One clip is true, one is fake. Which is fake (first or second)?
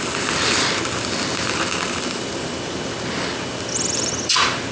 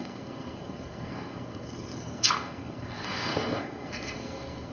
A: second